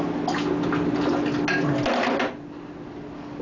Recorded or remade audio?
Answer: recorded